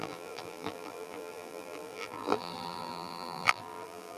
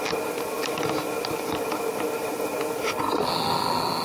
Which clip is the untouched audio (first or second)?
second